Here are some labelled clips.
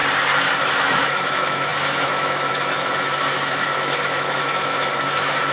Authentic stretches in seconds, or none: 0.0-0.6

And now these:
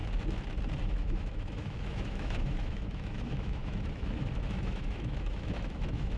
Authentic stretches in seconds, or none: 0.0-0.8

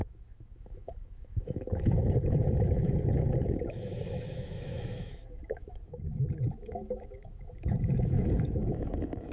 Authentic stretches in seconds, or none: none

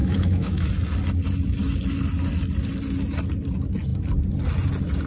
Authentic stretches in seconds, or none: 0.7-5.1

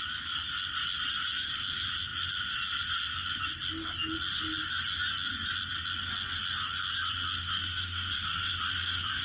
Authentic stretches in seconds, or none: 0.0-7.4

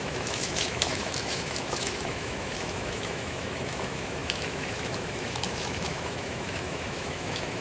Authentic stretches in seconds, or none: none

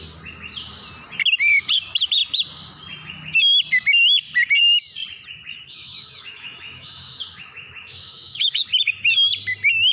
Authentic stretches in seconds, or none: 0.0-5.5; 8.6-9.9

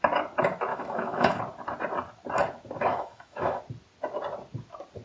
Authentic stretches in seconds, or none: 0.0-0.7; 1.4-2.9; 3.6-5.0